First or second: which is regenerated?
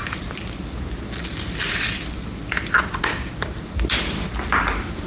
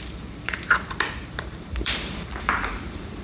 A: second